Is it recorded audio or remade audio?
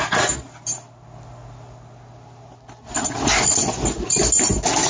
recorded